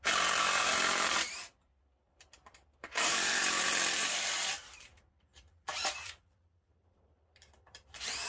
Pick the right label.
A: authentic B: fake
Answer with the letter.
B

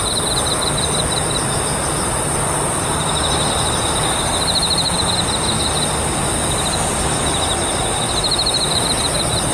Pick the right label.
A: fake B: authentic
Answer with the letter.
B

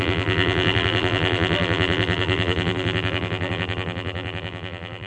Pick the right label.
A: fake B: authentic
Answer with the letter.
A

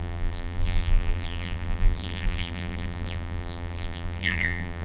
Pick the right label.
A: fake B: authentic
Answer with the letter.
A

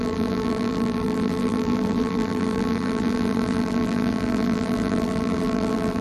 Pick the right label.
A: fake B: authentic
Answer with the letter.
A